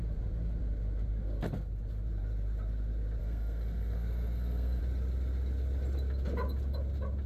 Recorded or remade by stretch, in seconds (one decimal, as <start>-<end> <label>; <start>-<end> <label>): 0.0-3.2 recorded; 3.2-4.8 remade; 4.8-7.3 recorded